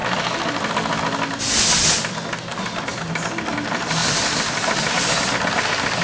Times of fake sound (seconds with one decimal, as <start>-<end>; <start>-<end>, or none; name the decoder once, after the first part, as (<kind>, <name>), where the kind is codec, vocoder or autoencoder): 4.0-4.9 (vocoder, BigVGAN v2)

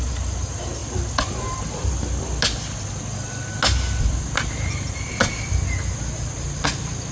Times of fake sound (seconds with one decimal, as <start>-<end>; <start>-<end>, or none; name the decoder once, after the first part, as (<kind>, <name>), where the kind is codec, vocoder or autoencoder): none

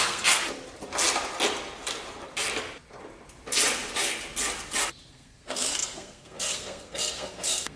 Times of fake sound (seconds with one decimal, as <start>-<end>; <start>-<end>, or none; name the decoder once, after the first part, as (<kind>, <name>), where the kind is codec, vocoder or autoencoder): 0.0-0.4 (codec, SNAC); 5.1-7.8

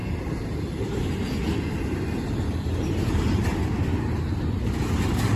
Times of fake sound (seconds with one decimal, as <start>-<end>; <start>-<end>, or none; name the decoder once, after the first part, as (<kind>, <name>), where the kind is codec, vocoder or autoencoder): 1.7-3.5 (vocoder, BigVGAN v2); 4.7-5.4